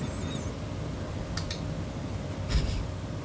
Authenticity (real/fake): real